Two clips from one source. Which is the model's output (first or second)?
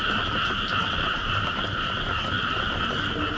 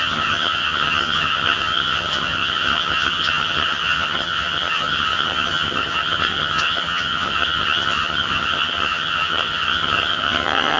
second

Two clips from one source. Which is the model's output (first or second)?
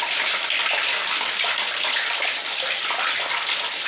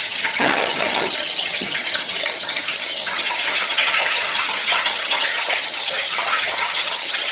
second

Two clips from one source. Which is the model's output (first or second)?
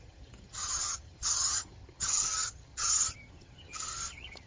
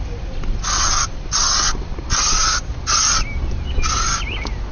first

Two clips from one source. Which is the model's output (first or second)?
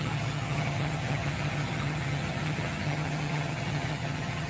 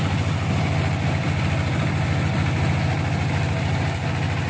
first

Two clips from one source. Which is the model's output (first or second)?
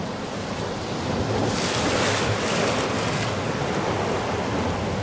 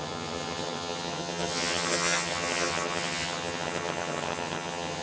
second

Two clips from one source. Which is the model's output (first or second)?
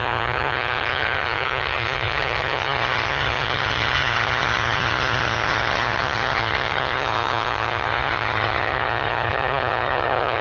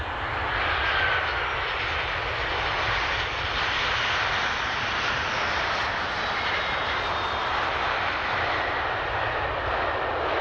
first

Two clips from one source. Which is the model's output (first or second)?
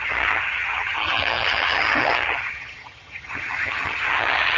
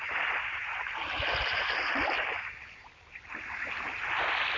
first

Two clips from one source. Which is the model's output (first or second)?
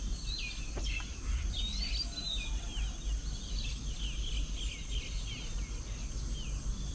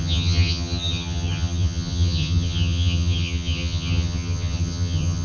second